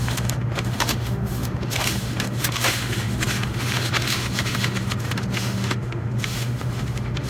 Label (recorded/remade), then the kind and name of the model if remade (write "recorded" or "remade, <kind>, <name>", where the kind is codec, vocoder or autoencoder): remade, autoencoder, DAC-VAE